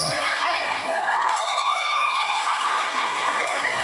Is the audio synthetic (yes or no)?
yes